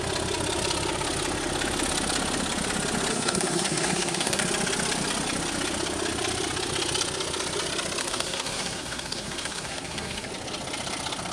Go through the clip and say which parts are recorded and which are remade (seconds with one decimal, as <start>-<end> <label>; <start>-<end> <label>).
0.0-3.1 recorded; 3.1-4.4 remade; 4.4-8.0 recorded; 8.0-10.3 remade; 10.3-11.3 recorded